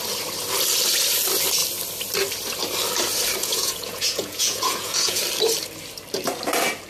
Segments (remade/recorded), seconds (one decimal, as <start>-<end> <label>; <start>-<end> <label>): 0.0-3.4 recorded; 3.4-5.2 remade; 5.2-6.9 recorded